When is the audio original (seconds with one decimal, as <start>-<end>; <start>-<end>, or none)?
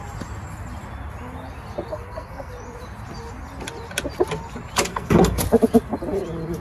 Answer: 0.0-1.9; 2.5-4.9; 5.4-6.6